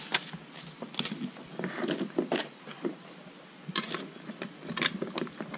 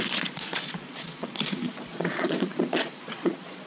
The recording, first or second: first